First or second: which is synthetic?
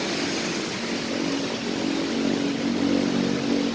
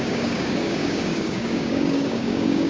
second